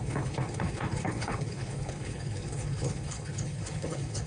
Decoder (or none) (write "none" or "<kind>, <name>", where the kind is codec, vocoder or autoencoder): codec, HILCodec